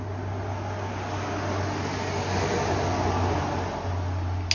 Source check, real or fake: real